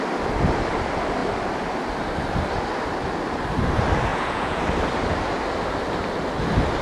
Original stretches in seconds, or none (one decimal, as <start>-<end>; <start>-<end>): 0.0-4.1; 4.6-6.8